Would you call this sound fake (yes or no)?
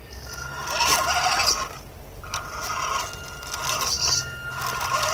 no